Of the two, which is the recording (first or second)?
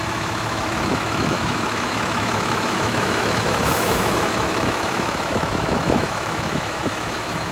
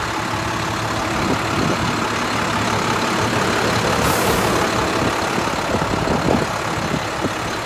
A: second